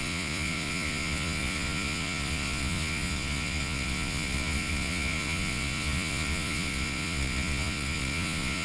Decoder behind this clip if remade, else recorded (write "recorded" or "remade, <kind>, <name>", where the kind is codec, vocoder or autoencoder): remade, vocoder, Vocos